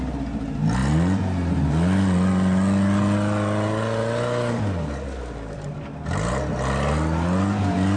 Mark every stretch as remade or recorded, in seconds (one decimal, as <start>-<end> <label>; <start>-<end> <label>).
0.0-8.0 recorded